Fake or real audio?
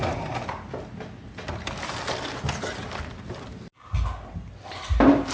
real